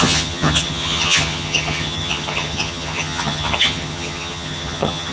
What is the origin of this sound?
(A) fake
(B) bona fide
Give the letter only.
A